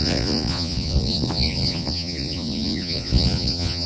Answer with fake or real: fake